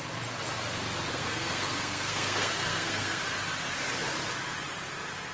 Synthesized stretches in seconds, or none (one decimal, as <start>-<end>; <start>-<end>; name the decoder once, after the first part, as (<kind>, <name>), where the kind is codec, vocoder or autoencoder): 1.1-3.2 (codec, SNAC)